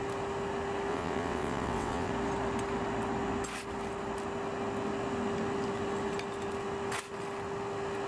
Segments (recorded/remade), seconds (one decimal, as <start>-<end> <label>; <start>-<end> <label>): 0.0-0.9 recorded; 0.9-2.1 remade; 2.1-8.1 recorded